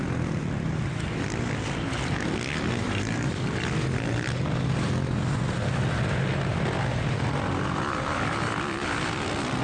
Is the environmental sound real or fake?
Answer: real